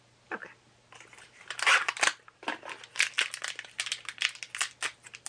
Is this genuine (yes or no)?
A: yes